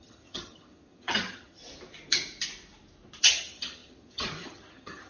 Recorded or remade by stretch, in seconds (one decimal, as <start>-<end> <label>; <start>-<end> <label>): 0.0-1.6 remade; 1.6-3.2 recorded; 3.2-5.1 remade